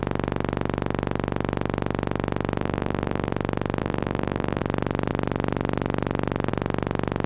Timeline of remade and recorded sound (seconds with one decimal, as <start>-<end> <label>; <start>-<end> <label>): 0.0-2.6 recorded; 2.6-3.3 remade; 3.3-3.8 recorded; 3.8-4.6 remade; 4.6-7.3 recorded